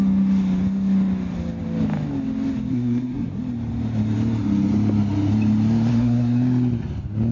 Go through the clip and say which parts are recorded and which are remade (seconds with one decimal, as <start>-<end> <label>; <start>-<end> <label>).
0.0-2.7 recorded; 2.7-3.4 remade; 3.4-5.9 recorded; 5.9-6.4 remade; 6.4-7.3 recorded

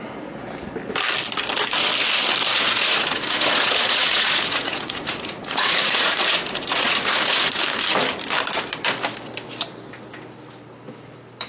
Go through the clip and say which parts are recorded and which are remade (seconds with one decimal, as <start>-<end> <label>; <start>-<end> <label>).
0.0-2.5 recorded; 2.5-7.6 remade; 7.6-11.5 recorded

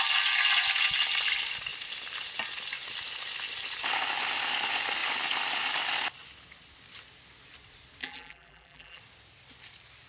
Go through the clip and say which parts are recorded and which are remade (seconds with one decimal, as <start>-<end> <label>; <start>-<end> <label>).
0.0-8.0 recorded; 8.0-9.0 remade; 9.0-10.1 recorded

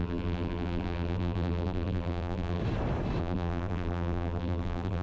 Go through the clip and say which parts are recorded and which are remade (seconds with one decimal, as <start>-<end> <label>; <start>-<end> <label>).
0.0-2.6 remade; 2.6-3.2 recorded; 3.2-5.0 remade

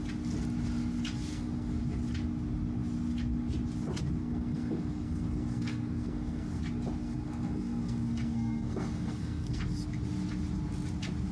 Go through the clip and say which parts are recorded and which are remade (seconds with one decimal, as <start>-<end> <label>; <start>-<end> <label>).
0.0-1.3 recorded; 1.3-1.8 remade; 1.8-4.2 recorded; 4.2-6.6 remade; 6.6-7.0 recorded; 7.0-9.8 remade; 9.8-11.3 recorded

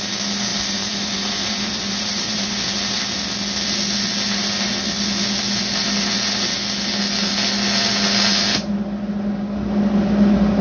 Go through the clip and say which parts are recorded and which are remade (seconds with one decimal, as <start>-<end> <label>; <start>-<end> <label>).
0.0-0.5 recorded; 0.5-3.0 remade; 3.0-10.6 recorded